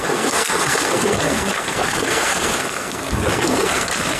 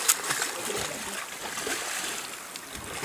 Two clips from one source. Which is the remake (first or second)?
first